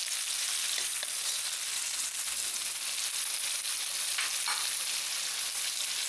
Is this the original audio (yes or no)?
yes